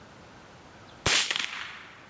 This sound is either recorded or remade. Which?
recorded